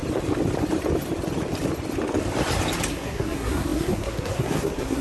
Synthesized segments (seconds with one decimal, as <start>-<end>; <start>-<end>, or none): 2.9-5.0